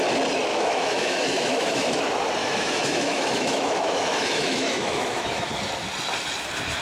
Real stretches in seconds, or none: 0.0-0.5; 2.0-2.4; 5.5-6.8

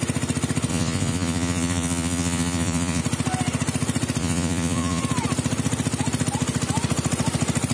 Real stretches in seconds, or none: 0.0-0.7; 3.0-4.2; 5.0-7.7

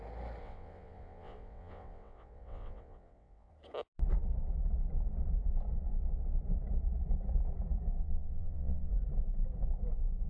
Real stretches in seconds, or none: 0.0-0.4; 3.5-8.0; 8.9-10.3

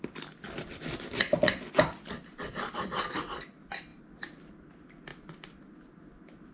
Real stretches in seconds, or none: 0.0-6.5

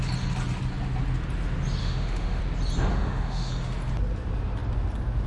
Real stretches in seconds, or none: 0.0-1.8; 2.4-2.9; 3.5-5.3

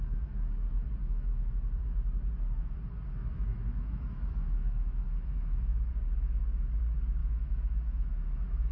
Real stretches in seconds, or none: 0.0-1.0; 1.5-3.2; 5.9-7.2

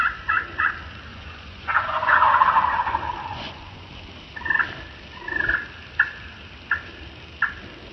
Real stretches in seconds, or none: 0.7-1.1; 2.3-3.3; 3.9-7.9